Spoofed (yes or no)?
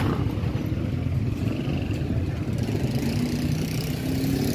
no